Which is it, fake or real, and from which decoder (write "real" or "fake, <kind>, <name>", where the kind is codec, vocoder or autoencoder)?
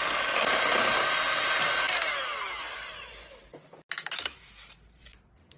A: real